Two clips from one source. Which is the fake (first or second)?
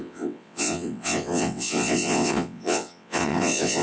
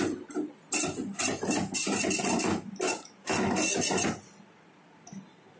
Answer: first